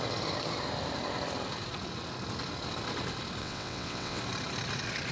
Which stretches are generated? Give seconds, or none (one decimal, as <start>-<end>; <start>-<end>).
3.4-4.2

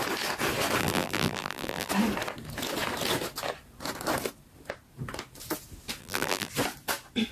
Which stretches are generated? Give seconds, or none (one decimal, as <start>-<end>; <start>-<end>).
0.8-1.9; 6.0-6.5

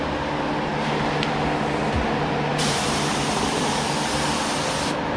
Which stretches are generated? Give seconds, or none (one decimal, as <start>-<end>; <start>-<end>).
2.5-4.1

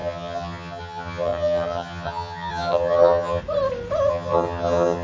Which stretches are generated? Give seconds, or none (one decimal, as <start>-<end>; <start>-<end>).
0.0-3.4; 4.1-5.0

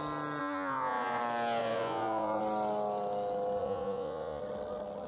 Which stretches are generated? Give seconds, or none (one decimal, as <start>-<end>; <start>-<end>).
0.4-1.2; 1.6-2.4; 3.6-4.4

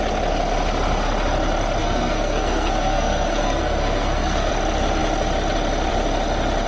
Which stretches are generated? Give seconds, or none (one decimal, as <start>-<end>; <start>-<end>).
1.8-4.5

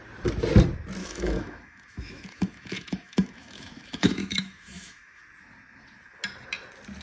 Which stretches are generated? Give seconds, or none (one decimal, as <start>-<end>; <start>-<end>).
1.0-5.2